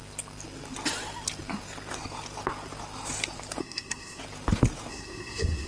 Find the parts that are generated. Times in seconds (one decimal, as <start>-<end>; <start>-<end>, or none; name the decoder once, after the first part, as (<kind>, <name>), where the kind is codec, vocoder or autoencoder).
3.6-4.2 (codec, SNAC); 4.9-5.7